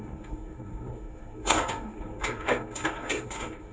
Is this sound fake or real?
fake